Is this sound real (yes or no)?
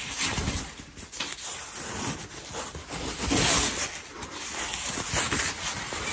yes